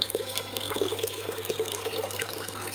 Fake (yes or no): yes